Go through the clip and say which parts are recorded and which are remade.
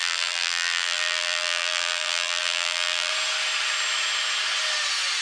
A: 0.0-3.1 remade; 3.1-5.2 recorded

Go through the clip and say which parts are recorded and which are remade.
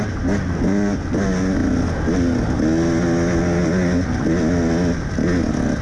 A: 0.0-5.8 recorded